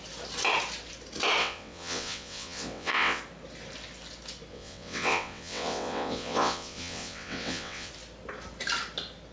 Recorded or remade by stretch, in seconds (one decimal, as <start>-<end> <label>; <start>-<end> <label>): 0.0-1.4 recorded; 1.4-3.2 remade; 3.2-4.5 recorded; 4.5-7.9 remade; 7.9-9.3 recorded